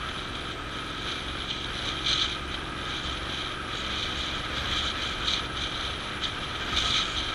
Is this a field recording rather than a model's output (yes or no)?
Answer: yes